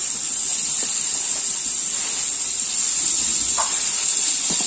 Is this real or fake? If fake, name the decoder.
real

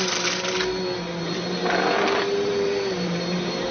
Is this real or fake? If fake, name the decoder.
real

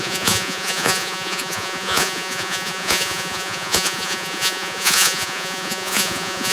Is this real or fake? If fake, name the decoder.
fake, vocoder, Vocos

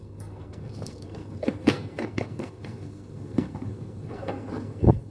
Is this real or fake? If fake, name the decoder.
fake, codec, SNAC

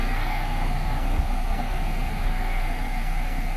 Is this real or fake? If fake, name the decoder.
fake, codec, SNAC